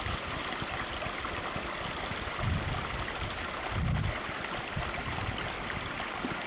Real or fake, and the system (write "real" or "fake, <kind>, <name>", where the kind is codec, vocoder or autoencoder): real